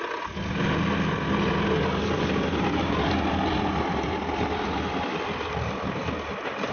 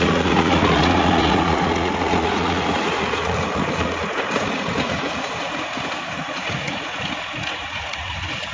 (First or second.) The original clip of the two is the first